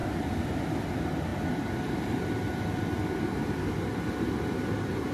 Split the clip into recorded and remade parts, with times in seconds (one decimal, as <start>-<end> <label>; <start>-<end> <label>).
0.0-5.1 recorded